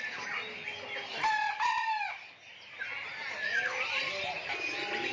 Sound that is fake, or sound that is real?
real